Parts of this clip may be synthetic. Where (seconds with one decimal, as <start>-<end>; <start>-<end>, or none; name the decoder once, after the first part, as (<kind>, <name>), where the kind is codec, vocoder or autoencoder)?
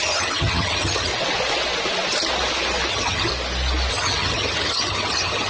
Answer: 0.0-1.1 (vocoder, HiFi-GAN); 2.9-3.3; 3.9-5.5